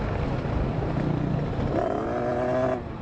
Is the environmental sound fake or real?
real